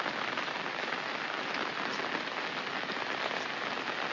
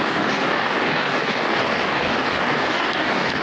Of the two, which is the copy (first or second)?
second